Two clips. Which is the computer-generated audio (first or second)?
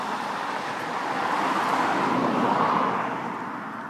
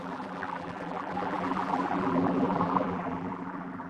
second